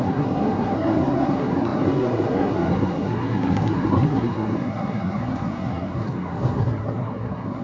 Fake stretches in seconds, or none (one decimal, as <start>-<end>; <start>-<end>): 0.0-7.6